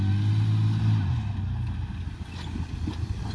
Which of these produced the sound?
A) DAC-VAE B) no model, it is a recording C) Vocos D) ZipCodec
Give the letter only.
B